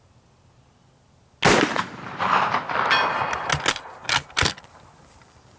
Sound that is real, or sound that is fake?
real